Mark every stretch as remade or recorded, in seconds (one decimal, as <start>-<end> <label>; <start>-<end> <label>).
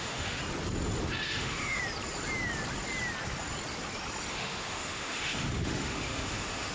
0.0-0.4 remade; 0.4-1.3 recorded; 1.3-1.8 remade; 1.8-4.3 recorded; 4.3-6.7 remade